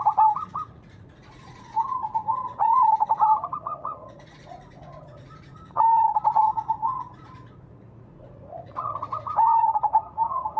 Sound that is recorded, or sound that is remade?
remade